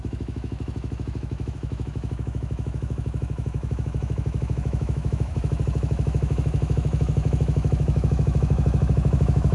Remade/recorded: remade